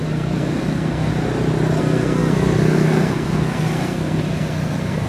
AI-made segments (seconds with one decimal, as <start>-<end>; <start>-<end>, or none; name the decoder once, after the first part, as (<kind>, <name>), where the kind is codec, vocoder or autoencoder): 0.0-1.1 (codec, SNAC); 1.8-5.1